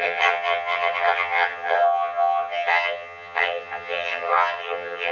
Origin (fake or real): fake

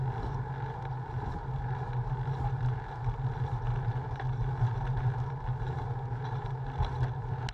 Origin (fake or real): real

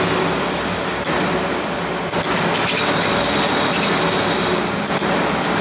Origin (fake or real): real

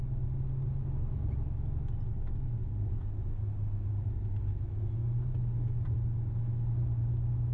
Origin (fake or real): real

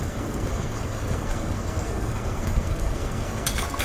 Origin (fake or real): fake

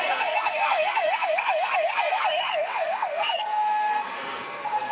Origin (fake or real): fake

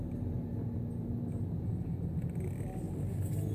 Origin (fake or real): real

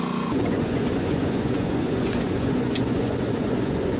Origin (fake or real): fake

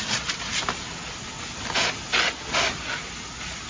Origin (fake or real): real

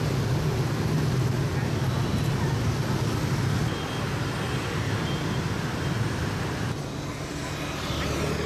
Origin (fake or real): real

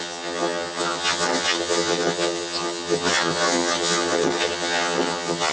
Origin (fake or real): fake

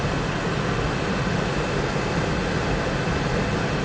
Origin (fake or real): real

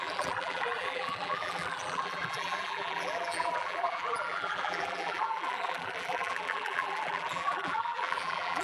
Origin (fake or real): fake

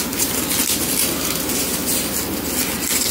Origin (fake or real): real